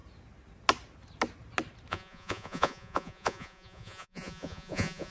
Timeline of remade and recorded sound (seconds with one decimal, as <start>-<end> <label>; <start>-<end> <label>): 0.0-1.9 recorded; 1.9-5.1 remade